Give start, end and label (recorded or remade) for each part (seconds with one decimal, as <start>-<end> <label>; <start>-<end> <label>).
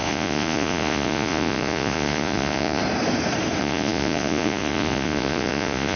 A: 0.0-2.8 remade; 2.8-3.6 recorded; 3.6-6.0 remade